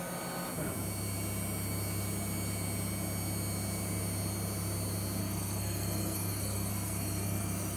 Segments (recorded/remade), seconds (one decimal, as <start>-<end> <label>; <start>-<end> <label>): 0.0-5.2 recorded; 5.2-7.8 remade